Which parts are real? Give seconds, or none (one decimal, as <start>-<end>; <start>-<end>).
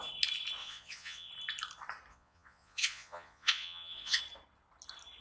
0.0-0.6; 1.3-2.1; 4.2-5.2